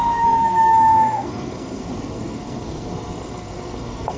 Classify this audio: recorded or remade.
remade